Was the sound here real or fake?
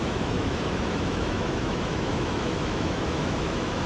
fake